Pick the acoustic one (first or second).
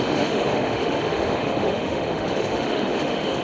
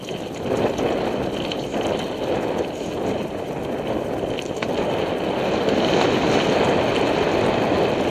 second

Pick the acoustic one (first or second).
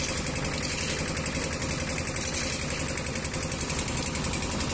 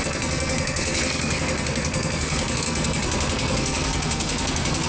first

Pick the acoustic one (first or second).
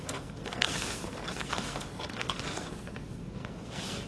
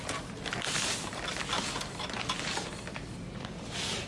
second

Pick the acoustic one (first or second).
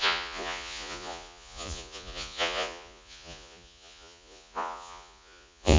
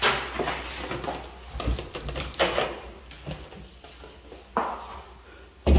second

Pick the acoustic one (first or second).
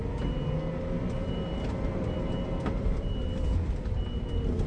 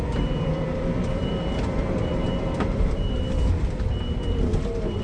first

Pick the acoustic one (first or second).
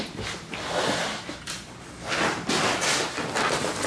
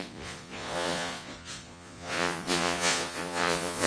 first